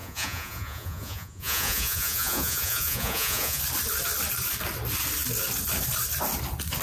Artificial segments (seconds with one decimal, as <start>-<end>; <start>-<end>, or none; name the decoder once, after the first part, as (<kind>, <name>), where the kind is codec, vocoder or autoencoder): 0.0-3.6 (vocoder, Vocos)